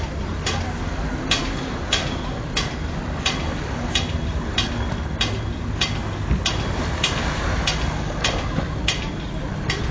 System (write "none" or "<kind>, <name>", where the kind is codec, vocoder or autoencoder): none